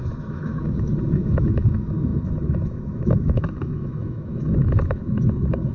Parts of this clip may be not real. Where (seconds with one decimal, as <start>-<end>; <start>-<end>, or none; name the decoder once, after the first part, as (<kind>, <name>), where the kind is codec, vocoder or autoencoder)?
0.0-5.7 (autoencoder, DAC-VAE)